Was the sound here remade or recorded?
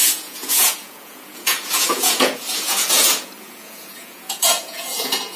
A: remade